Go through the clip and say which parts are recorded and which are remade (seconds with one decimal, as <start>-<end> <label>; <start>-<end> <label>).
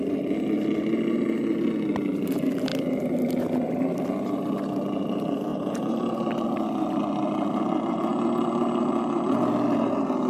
0.0-5.5 recorded; 5.5-6.3 remade; 6.3-10.3 recorded